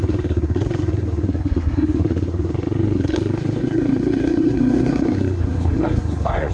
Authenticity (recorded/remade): remade